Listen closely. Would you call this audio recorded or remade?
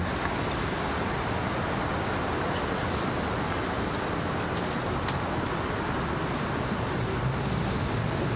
recorded